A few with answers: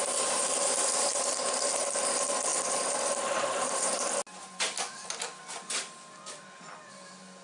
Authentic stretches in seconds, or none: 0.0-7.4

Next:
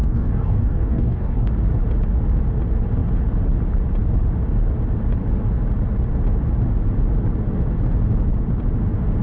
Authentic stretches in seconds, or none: 1.5-9.2

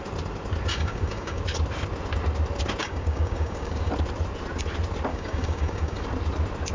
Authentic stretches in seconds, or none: 0.0-0.7; 1.4-2.8; 3.9-5.1; 6.0-6.7

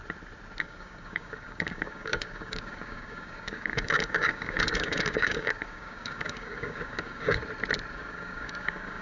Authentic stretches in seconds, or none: 0.0-0.6; 7.4-7.9